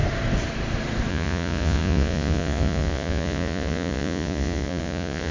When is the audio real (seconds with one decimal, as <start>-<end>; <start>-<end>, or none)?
0.0-1.1